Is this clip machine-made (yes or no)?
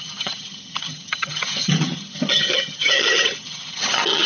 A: yes